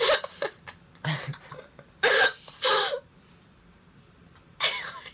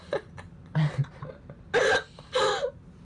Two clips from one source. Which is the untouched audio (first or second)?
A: second